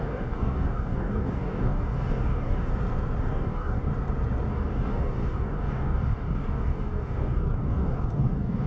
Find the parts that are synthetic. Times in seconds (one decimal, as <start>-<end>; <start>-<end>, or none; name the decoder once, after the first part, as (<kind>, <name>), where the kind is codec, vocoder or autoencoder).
0.0-2.7 (codec, DAC); 3.2-3.9; 4.5-8.7